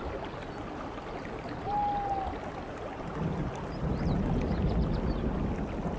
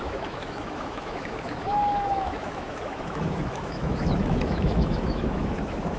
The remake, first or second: second